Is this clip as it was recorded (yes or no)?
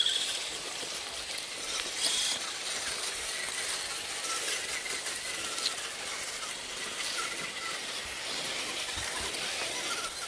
yes